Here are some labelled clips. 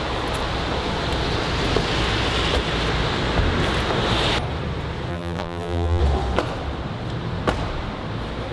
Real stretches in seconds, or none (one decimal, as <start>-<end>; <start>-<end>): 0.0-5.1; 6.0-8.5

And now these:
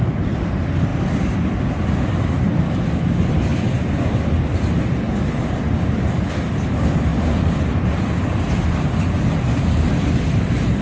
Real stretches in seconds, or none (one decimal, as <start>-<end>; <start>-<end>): 0.0-10.8

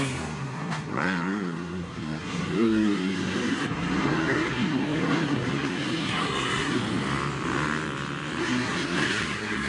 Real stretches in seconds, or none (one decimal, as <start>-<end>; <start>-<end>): 6.8-8.4

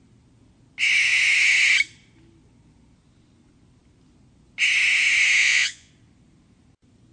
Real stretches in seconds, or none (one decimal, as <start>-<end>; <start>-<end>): 0.0-5.4; 5.9-7.1